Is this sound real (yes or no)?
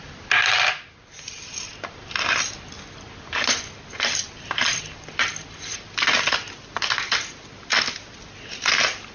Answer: yes